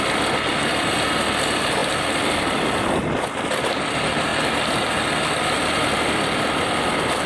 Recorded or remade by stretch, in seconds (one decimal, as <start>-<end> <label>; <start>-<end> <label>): 0.0-7.3 recorded